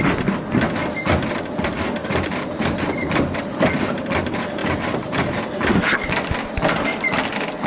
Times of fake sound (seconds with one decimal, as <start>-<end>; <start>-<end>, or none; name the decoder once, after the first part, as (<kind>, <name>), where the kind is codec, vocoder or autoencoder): 2.0-3.4 (vocoder, BigVGAN v2); 4.6-5.5